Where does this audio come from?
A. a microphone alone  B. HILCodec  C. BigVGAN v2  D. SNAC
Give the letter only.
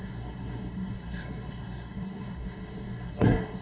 D